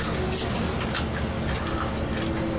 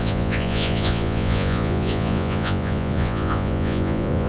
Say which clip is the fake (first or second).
second